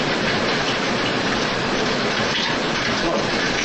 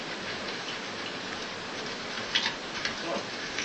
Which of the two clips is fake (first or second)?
first